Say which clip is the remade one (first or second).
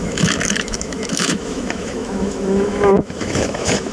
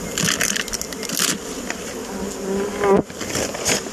first